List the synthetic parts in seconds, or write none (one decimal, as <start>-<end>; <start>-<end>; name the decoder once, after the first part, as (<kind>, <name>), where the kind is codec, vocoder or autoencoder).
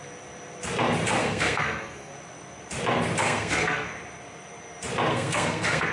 1.2-2.1 (codec, SNAC); 3.2-3.9; 5.1-5.9